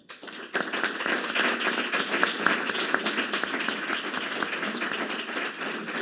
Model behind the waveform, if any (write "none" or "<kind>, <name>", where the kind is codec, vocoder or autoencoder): none